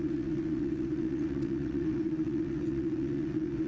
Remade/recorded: remade